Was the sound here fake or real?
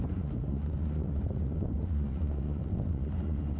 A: fake